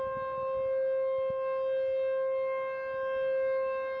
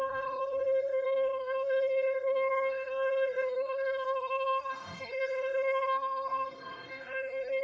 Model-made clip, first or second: second